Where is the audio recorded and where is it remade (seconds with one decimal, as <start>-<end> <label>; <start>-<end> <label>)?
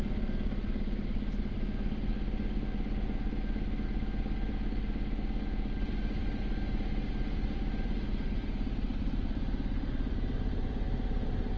0.0-2.1 remade; 2.1-5.9 recorded; 5.9-11.6 remade